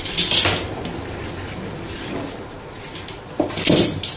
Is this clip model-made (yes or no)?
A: no